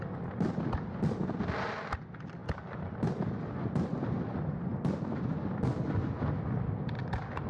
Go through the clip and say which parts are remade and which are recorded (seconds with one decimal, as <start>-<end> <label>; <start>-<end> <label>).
0.0-7.5 recorded